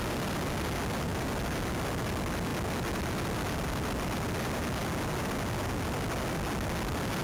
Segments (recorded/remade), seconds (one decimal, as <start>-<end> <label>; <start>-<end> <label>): 0.0-7.2 recorded